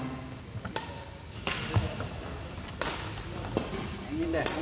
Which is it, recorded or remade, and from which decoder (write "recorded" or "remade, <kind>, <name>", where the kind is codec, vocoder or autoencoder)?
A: recorded